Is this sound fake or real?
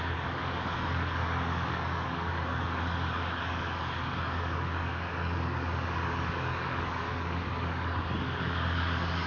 fake